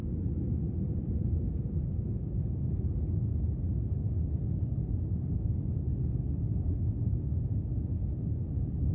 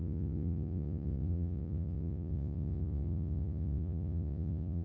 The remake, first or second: second